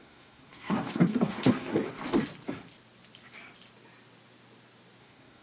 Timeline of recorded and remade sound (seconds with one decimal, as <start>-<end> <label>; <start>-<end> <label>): 0.0-1.8 remade; 1.8-5.0 recorded; 5.0-5.4 remade

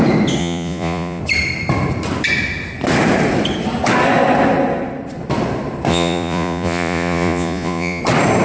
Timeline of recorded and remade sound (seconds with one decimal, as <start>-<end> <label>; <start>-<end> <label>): 0.0-0.4 recorded; 0.4-1.2 remade; 1.2-5.9 recorded; 5.9-8.0 remade; 8.0-8.4 recorded

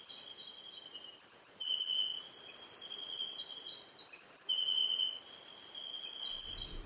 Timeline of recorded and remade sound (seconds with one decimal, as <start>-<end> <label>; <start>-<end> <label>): 0.0-2.1 recorded; 2.1-4.0 remade; 4.0-4.8 recorded; 4.8-5.3 remade; 5.3-6.9 recorded

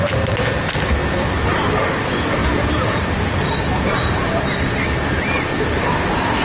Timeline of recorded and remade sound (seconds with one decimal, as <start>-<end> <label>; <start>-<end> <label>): 0.0-2.4 recorded; 2.4-5.6 remade; 5.6-6.4 recorded

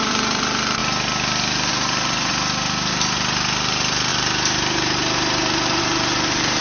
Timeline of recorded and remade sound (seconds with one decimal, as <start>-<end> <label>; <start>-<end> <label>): 0.0-0.8 remade; 0.8-1.7 recorded; 1.7-2.3 remade; 2.3-2.9 recorded; 2.9-6.6 remade

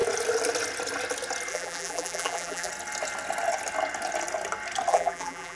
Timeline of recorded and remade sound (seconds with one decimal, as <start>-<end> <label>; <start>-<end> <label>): 0.0-1.5 recorded; 1.5-2.7 remade; 2.7-4.9 recorded; 4.9-5.6 remade

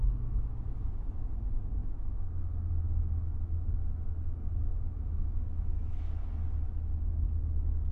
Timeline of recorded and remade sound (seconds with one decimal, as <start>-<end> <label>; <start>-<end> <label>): 0.0-1.8 recorded; 1.8-4.0 remade; 4.0-4.7 recorded; 4.7-6.1 remade; 6.1-7.9 recorded